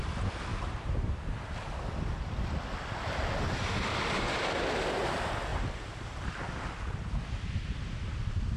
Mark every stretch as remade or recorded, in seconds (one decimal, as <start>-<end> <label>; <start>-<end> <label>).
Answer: 0.0-0.5 recorded; 0.5-1.1 remade; 1.1-5.5 recorded; 5.5-6.6 remade; 6.6-8.6 recorded